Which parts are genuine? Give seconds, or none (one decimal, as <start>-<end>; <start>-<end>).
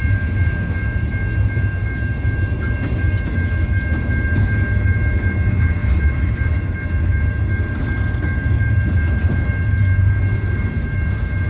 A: 0.0-11.5